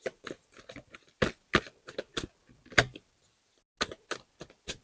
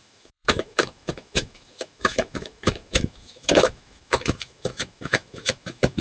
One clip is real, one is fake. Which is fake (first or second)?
second